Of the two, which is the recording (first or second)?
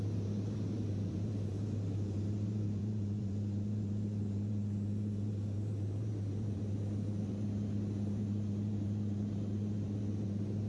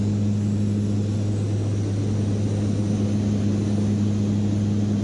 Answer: second